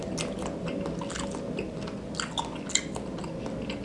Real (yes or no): yes